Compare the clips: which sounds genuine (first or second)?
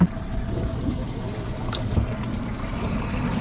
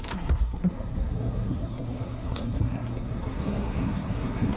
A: first